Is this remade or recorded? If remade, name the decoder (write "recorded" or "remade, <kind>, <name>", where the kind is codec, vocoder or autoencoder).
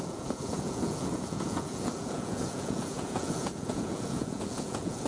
remade, vocoder, Vocos